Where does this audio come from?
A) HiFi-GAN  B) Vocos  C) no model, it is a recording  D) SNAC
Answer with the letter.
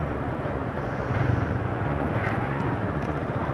B